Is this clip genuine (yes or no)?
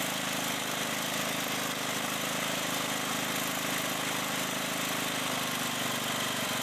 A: yes